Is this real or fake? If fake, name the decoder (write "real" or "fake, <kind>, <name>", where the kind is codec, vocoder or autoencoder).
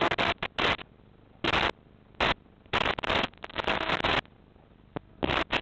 real